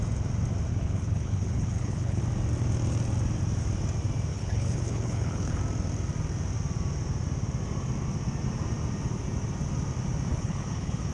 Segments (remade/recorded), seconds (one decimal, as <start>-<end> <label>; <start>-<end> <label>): 0.0-0.7 recorded; 0.7-2.2 remade; 2.2-4.3 recorded; 4.3-5.6 remade; 5.6-10.3 recorded; 10.3-11.1 remade

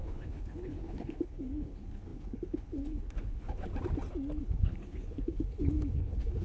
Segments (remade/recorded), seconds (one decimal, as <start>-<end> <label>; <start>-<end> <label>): 0.0-3.7 remade; 3.7-4.4 recorded; 4.4-6.4 remade

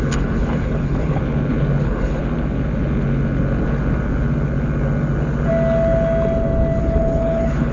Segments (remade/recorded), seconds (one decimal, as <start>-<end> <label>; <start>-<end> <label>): 0.0-1.2 remade; 1.2-1.8 recorded; 1.8-2.2 remade; 2.2-6.8 recorded; 6.8-7.7 remade

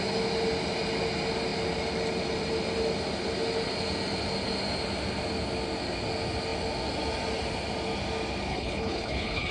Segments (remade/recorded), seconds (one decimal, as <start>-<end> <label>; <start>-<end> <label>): 0.0-8.5 recorded; 8.5-9.5 remade

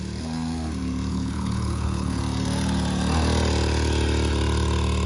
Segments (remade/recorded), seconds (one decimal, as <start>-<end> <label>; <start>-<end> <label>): 0.0-1.1 recorded; 1.1-2.2 remade; 2.2-5.1 recorded

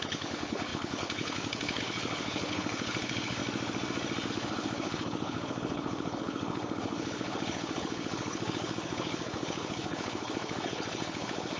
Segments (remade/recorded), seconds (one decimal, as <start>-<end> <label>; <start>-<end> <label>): 0.0-3.4 remade; 3.4-4.3 recorded; 4.3-11.6 remade

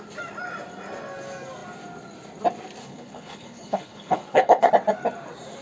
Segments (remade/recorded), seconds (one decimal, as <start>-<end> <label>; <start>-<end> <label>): 0.0-2.8 recorded; 2.8-4.7 remade; 4.7-5.6 recorded

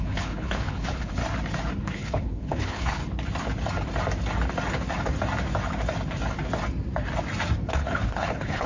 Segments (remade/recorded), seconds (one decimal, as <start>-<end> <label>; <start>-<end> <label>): 0.0-1.2 remade; 1.2-1.8 recorded; 1.8-3.0 remade; 3.0-7.7 recorded; 7.7-8.7 remade